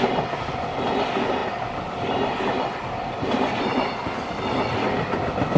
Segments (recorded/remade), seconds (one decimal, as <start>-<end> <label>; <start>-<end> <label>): 0.0-5.6 recorded